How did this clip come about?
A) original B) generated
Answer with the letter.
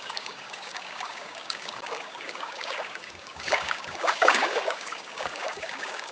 B